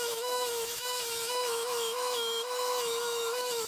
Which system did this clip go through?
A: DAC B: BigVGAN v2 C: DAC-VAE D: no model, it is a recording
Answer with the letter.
C